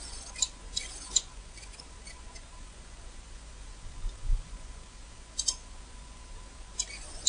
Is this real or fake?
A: fake